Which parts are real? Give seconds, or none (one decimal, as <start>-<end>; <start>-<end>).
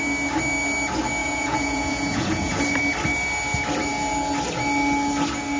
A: 0.0-1.2; 2.8-5.6